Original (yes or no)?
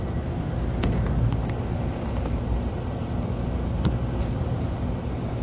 no